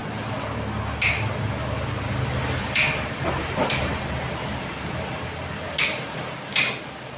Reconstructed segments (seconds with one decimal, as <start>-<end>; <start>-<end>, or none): none